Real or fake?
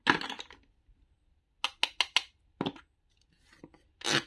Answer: real